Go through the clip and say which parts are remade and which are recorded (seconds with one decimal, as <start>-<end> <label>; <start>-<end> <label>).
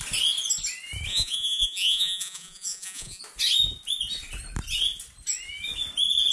0.0-1.1 recorded; 1.1-3.2 remade; 3.2-6.3 recorded